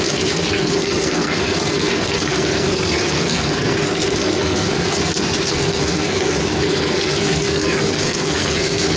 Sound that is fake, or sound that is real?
fake